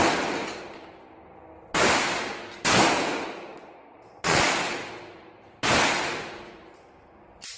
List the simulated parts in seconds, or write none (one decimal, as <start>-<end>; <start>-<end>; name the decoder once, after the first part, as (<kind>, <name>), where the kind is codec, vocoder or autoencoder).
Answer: 3.5-4.6 (vocoder, Vocos)